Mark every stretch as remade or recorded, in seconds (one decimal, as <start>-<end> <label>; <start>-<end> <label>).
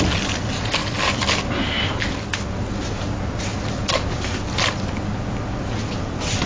0.0-6.5 recorded